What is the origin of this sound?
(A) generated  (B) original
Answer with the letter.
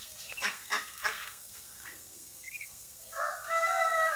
A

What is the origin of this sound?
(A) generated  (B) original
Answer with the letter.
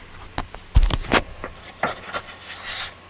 B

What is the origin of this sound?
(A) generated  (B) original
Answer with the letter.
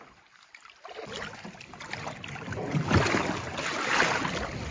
B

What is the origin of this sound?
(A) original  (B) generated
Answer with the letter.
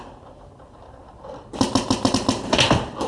A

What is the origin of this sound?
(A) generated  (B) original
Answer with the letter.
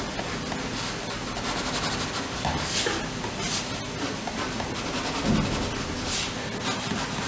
B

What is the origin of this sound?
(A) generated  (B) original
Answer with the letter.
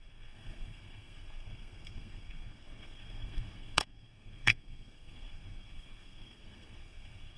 A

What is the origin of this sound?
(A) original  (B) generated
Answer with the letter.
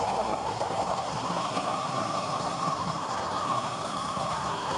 B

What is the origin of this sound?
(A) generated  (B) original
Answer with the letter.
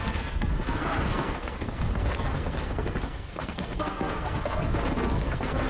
A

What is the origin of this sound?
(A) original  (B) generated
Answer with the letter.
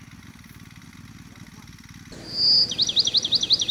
A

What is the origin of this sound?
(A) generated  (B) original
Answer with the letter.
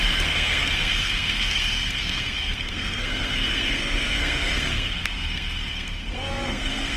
A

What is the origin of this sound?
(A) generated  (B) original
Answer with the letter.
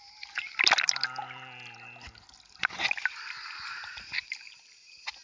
B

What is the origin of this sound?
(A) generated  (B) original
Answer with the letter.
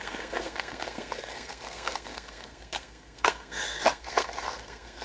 A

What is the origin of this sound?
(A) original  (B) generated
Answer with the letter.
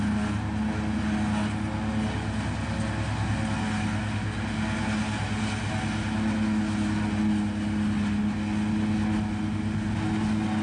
A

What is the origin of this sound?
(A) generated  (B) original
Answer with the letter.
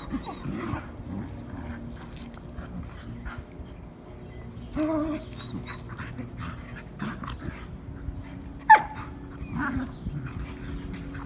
B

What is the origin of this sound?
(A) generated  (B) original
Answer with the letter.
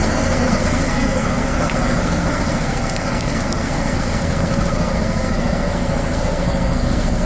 A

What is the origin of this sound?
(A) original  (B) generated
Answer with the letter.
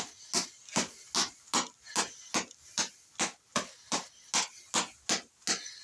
A